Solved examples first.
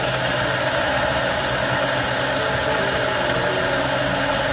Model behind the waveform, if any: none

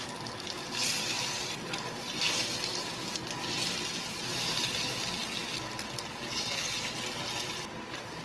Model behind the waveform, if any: none